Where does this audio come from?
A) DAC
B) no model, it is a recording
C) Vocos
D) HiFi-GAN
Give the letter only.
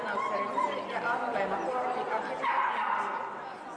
B